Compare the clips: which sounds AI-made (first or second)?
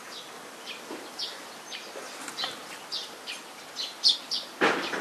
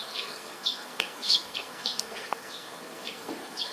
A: second